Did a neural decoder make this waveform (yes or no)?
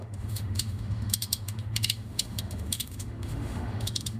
yes